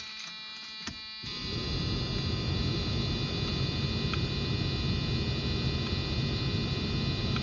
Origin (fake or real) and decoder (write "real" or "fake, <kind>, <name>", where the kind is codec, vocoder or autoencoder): real